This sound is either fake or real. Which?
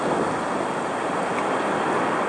real